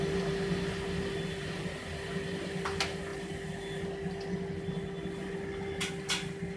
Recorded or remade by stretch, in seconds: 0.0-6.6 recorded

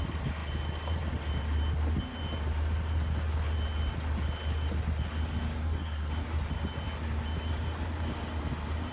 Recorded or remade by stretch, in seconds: 0.0-5.6 recorded; 5.6-6.1 remade; 6.1-8.9 recorded

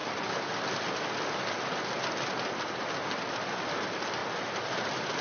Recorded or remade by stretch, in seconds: 0.0-5.2 recorded

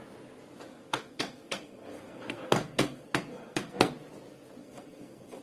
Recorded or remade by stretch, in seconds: 0.0-0.7 recorded; 0.7-3.9 remade; 3.9-4.6 recorded; 4.6-5.4 remade

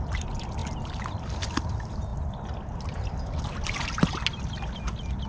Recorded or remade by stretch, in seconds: 0.0-5.3 recorded

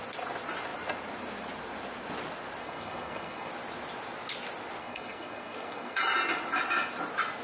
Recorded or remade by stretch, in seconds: 0.0-2.6 recorded; 2.6-3.5 remade; 3.5-4.8 recorded; 4.8-6.0 remade; 6.0-7.4 recorded

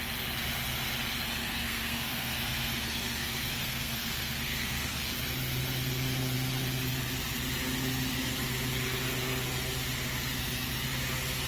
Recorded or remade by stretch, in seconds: 0.0-1.4 recorded; 1.4-5.0 remade; 5.0-11.5 recorded